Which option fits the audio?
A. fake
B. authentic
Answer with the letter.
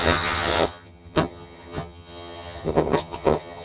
A